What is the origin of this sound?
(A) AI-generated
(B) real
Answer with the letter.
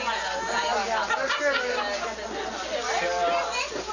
B